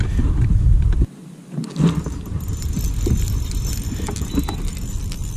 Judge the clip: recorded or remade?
recorded